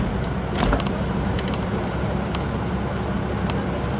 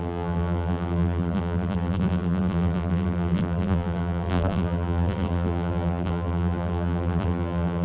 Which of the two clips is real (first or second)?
first